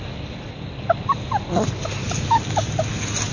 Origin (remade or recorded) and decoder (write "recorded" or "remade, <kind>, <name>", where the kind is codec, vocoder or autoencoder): recorded